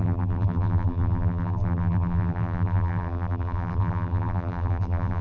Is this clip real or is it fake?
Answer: fake